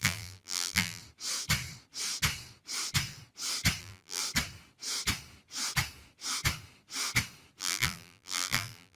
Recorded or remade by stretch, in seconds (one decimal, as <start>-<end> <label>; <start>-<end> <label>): 0.0-1.0 remade; 1.0-3.8 recorded; 3.8-4.2 remade; 4.2-7.6 recorded; 7.6-9.0 remade